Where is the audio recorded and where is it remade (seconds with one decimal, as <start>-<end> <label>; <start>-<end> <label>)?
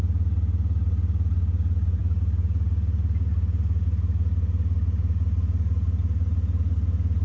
0.0-7.2 recorded